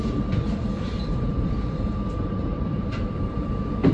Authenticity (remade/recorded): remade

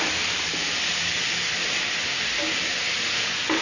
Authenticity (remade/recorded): recorded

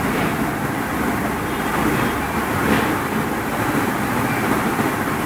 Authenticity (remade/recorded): recorded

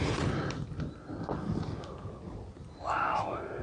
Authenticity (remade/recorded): recorded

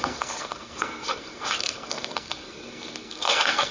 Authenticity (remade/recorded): remade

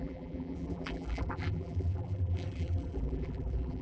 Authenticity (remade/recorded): remade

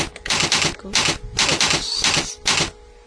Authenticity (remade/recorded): recorded